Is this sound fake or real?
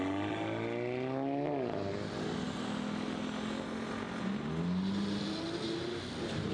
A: real